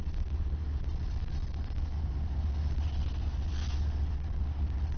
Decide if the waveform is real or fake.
real